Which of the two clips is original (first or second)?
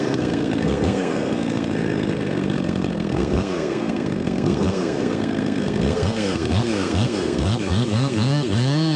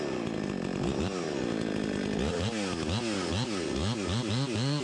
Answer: second